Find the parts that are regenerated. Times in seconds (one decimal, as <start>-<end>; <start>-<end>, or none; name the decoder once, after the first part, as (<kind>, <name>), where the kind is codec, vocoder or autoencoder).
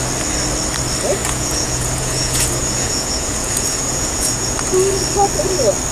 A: 1.2-4.7 (vocoder, Vocos)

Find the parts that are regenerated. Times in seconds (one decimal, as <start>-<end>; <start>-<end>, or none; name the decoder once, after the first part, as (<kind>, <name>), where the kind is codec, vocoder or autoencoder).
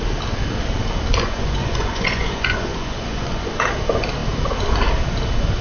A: 1.1-3.5 (vocoder, Vocos)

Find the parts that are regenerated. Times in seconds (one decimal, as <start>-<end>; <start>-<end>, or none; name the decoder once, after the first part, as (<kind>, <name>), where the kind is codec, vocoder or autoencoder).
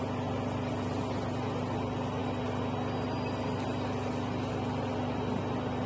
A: none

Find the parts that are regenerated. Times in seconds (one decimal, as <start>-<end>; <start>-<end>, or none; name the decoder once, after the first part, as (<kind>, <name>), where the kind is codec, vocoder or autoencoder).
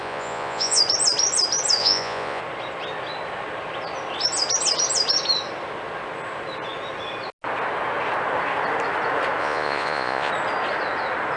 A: 0.0-0.8 (vocoder, Vocos); 1.8-2.4; 9.4-10.3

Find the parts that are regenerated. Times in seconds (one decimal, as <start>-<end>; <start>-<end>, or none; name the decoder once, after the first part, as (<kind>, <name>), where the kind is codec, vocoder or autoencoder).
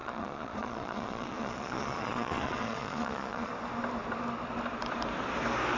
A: 0.0-3.5 (vocoder, Vocos)